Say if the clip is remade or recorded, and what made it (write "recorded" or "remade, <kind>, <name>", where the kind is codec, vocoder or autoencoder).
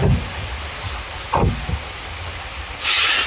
recorded